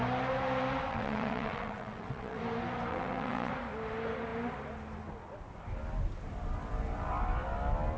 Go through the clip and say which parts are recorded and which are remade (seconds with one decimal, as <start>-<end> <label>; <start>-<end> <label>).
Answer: 0.0-0.9 recorded; 0.9-2.4 remade; 2.4-2.9 recorded; 2.9-3.5 remade; 3.5-8.0 recorded